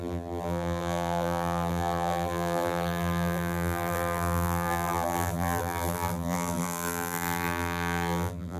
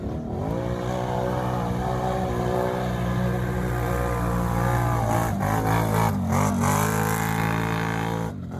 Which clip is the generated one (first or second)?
first